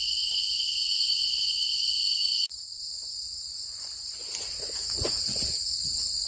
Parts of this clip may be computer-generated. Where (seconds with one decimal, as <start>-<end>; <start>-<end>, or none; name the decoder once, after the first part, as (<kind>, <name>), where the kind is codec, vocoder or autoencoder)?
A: 0.0-6.3 (vocoder, Vocos)